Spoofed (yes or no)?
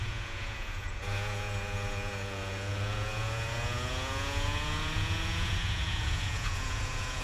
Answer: yes